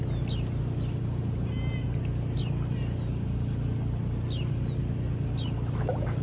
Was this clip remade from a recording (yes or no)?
no